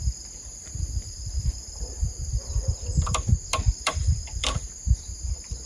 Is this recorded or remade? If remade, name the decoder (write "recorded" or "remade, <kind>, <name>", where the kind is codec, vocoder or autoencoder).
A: remade, vocoder, BigVGAN v2